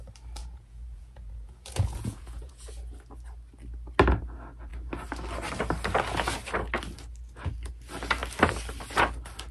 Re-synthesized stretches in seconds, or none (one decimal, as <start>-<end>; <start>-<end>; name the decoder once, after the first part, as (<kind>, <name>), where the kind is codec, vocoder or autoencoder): 0.4-2.5 (vocoder, Vocos)